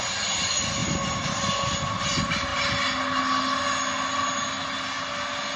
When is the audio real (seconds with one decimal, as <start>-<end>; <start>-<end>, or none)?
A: 0.0-0.8; 2.1-5.6